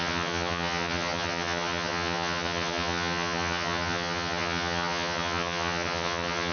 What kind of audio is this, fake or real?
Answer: fake